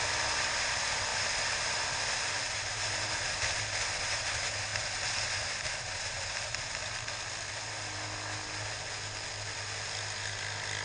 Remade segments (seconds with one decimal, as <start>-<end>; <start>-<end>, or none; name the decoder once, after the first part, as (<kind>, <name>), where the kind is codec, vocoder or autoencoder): 1.1-2.7 (vocoder, BigVGAN v2)